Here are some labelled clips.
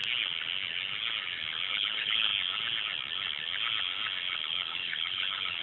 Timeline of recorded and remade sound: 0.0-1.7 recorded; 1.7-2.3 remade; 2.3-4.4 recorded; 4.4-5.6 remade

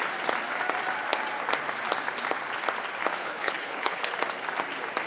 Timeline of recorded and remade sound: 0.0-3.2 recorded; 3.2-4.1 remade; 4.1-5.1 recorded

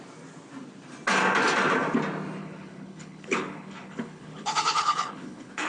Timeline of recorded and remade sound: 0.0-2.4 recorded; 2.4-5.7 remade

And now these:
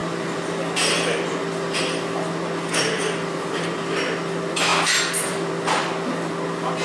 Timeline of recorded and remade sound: 0.0-6.8 recorded